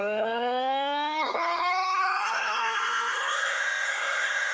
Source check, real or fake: fake